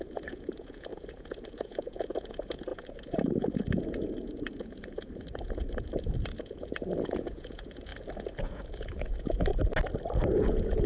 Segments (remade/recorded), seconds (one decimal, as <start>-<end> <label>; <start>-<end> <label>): 0.0-7.9 remade; 7.9-8.4 recorded; 8.4-9.5 remade; 9.5-10.3 recorded; 10.3-10.9 remade